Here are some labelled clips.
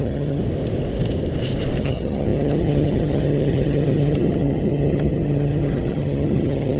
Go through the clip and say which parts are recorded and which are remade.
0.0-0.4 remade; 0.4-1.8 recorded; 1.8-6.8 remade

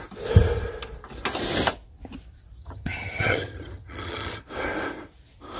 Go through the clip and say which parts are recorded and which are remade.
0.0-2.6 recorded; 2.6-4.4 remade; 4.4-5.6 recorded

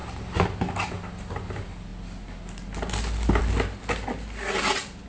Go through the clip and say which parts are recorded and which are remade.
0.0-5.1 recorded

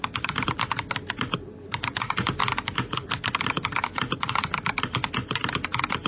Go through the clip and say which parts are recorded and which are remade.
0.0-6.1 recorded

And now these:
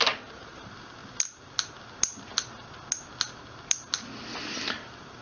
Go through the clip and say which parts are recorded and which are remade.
0.0-5.2 recorded

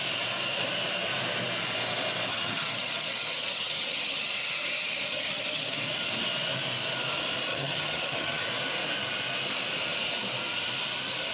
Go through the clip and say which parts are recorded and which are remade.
0.0-2.3 recorded; 2.3-5.9 remade; 5.9-7.5 recorded; 7.5-8.4 remade; 8.4-11.3 recorded